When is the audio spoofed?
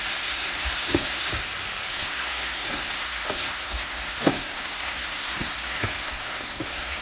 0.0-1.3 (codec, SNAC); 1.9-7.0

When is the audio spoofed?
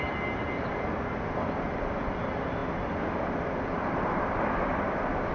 none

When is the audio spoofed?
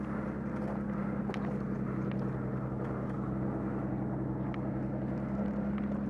none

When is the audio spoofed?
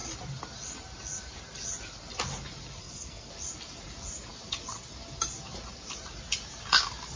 2.8-3.3 (codec, SNAC)